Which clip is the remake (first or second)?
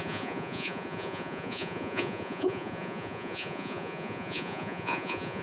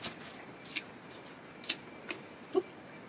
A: first